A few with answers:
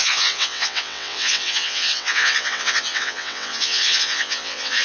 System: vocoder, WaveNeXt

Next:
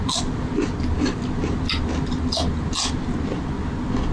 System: none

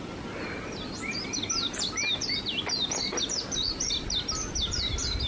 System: none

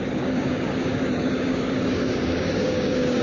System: codec, DAC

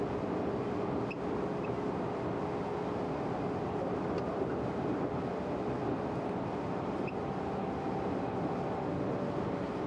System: none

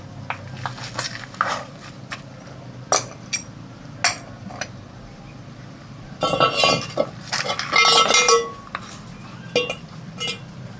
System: none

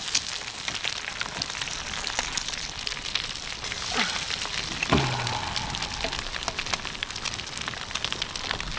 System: none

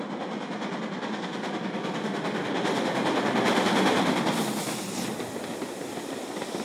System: none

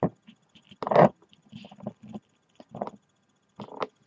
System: none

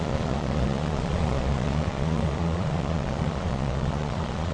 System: vocoder, Vocos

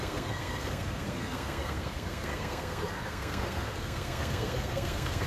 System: codec, SNAC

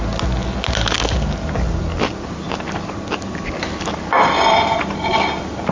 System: none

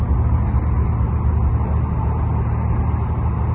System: none